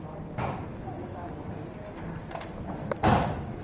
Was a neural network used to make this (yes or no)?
no